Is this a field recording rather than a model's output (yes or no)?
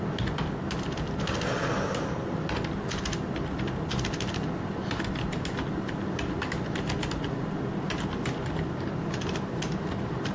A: yes